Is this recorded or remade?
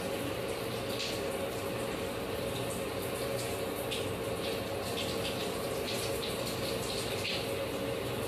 recorded